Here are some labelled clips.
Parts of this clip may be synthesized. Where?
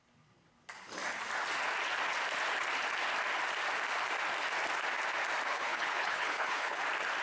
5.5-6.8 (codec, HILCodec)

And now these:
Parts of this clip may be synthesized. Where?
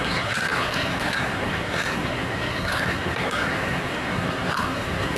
0.0-5.2 (codec, SNAC)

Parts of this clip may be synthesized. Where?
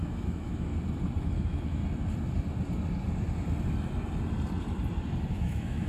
0.0-0.7 (autoencoder, DAC-VAE); 1.2-1.8; 5.3-5.9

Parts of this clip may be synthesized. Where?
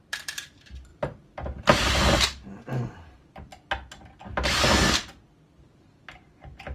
0.0-3.5 (vocoder, BigVGAN v2); 5.6-6.7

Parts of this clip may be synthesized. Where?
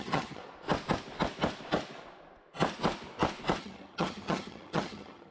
0.0-0.4 (vocoder, HiFi-GAN); 3.6-5.3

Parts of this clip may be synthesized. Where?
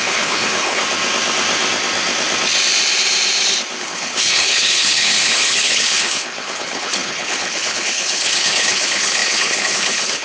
0.0-0.8 (codec, HILCodec); 3.8-10.2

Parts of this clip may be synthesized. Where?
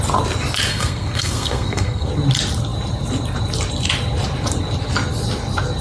0.7-2.1 (codec, SNAC)